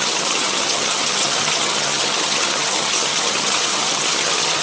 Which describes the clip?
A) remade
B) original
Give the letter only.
A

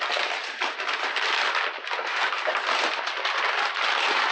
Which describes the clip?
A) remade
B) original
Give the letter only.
B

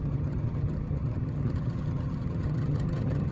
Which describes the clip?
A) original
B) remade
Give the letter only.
B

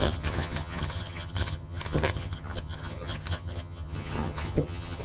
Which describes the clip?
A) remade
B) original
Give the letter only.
A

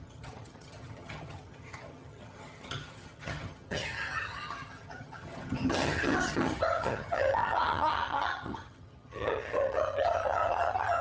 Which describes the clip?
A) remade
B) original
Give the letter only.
A